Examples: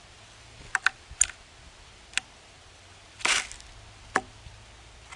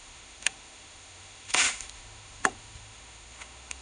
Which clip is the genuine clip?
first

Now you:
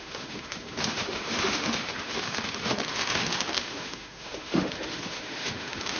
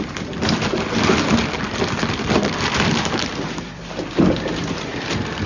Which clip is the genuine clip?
second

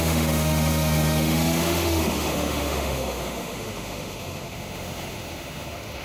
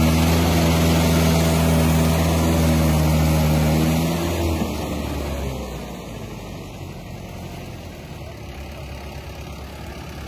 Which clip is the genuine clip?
second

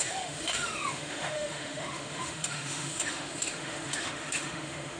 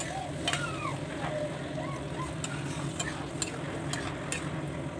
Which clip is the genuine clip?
second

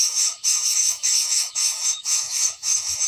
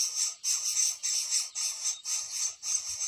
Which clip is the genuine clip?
second